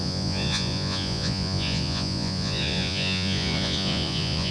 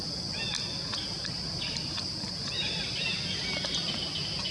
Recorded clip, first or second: second